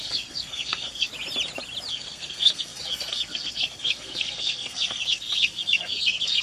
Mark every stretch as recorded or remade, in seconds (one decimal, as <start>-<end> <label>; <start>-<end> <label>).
0.0-1.1 remade; 1.1-1.9 recorded; 1.9-6.4 remade